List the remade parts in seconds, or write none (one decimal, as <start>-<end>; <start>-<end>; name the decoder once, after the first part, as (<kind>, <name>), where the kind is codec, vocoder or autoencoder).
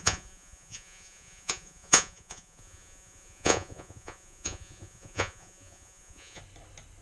0.0-6.4 (vocoder, Vocos)